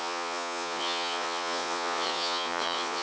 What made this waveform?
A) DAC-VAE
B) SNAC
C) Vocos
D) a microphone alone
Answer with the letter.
C